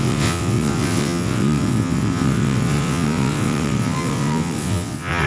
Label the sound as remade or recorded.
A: remade